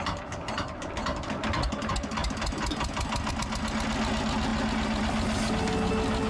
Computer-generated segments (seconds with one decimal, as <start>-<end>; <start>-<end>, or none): none